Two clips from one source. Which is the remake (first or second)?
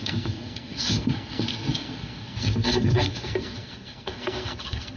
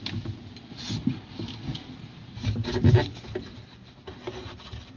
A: first